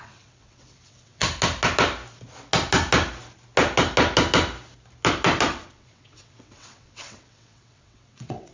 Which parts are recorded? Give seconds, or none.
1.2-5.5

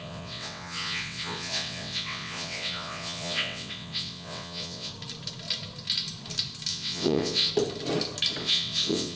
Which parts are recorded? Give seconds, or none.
4.9-6.7; 7.5-8.4

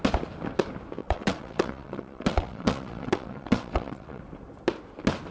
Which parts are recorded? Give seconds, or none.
0.0-1.0; 4.2-5.3

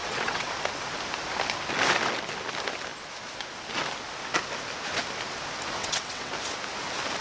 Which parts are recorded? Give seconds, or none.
0.5-5.8; 6.3-7.2